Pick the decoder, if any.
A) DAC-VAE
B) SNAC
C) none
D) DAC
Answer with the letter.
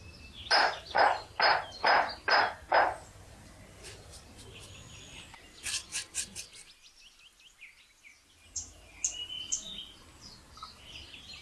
C